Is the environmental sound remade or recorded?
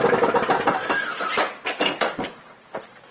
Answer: recorded